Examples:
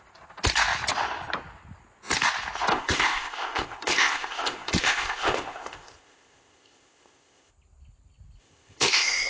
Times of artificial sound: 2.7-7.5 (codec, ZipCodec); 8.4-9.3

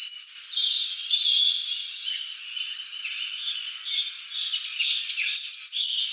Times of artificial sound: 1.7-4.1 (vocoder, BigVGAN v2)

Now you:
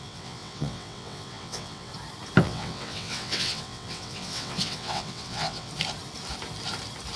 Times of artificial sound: 0.0-1.9 (vocoder, WaveNeXt); 2.4-5.7